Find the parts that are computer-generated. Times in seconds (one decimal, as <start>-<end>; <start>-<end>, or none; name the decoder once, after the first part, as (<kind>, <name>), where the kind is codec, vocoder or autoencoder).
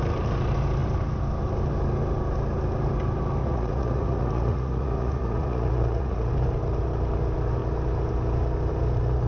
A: 3.4-6.3 (vocoder, Vocos)